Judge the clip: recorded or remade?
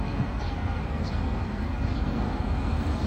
remade